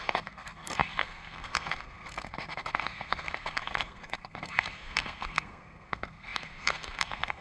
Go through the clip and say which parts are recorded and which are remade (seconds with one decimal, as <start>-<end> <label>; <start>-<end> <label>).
0.0-7.4 remade